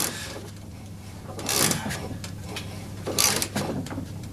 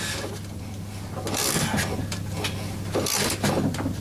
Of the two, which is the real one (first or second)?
second